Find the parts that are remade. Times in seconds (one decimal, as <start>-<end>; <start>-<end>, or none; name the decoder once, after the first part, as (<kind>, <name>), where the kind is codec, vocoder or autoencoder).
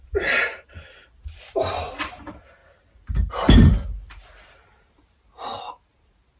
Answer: none